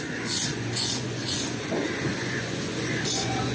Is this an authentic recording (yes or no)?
no